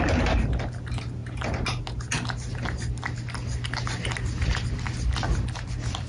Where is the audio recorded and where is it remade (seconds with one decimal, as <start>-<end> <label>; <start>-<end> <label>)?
0.0-6.1 recorded